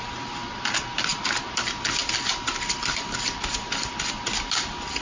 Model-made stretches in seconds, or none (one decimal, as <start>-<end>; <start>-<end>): none